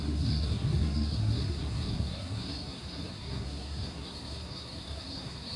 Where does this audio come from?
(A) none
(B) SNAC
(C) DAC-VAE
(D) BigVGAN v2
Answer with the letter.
B